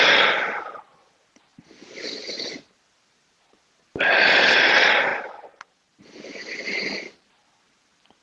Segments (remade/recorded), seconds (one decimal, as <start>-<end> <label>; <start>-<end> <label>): 0.0-8.2 recorded